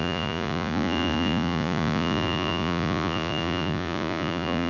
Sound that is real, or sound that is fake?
fake